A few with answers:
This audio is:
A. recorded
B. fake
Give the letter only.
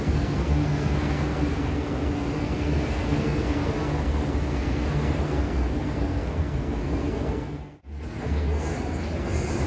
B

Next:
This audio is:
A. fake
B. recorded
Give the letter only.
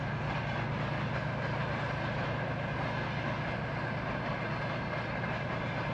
B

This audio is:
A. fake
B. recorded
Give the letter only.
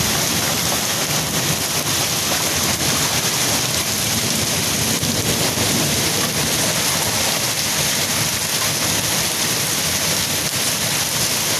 B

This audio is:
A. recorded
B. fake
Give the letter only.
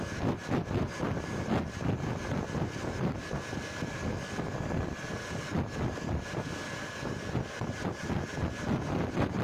A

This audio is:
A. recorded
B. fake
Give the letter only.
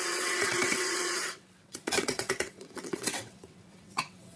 B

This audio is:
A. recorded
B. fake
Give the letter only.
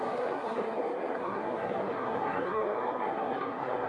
B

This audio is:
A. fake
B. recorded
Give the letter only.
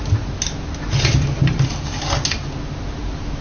B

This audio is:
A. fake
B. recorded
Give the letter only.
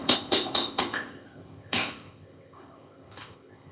A